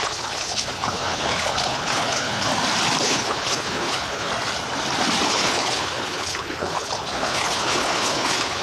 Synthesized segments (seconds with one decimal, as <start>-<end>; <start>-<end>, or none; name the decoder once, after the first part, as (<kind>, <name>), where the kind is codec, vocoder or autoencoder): 0.0-2.5 (codec, HILCodec); 3.0-4.3; 5.3-8.6